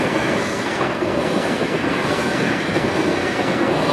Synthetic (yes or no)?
yes